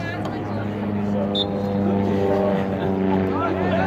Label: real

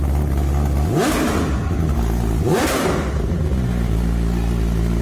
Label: real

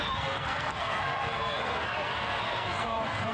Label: fake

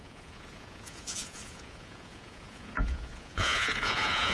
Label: fake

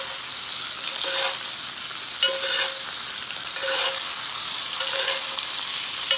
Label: real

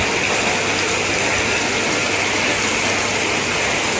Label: real